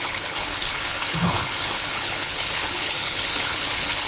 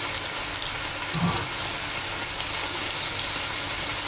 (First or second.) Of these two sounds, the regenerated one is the first